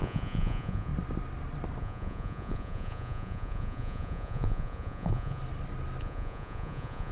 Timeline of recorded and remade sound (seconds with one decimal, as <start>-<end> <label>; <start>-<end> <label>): 0.0-0.9 remade; 0.9-1.8 recorded; 1.8-5.4 remade; 5.4-6.0 recorded; 6.0-7.1 remade